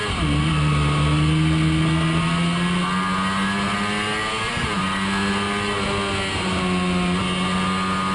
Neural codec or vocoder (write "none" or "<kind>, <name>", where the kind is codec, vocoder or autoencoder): none